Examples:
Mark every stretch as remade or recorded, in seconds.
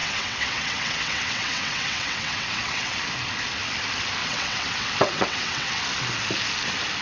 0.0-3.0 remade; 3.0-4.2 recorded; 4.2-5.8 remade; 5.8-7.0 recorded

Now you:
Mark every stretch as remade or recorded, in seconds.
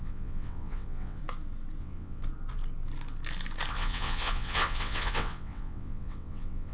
0.0-1.2 remade; 1.2-1.8 recorded; 1.8-2.2 remade; 2.2-3.7 recorded; 3.7-6.7 remade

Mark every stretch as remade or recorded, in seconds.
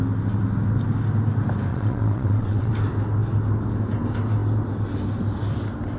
0.0-1.7 recorded; 1.7-2.7 remade; 2.7-6.0 recorded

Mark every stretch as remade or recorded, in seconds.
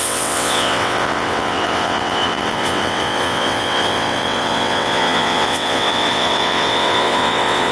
0.0-7.7 remade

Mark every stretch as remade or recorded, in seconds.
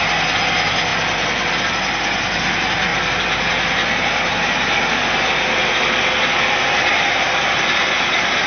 0.0-8.5 recorded